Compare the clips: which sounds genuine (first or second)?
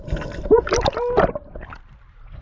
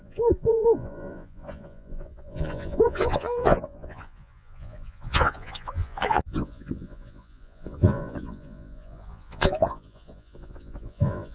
first